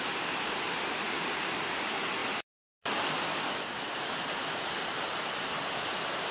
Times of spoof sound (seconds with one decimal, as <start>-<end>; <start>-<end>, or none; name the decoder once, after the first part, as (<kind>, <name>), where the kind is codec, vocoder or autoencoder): 2.2-4.4 (vocoder, BigVGAN v2)